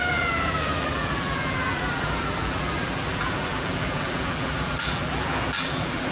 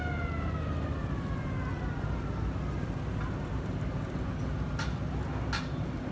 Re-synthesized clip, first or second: first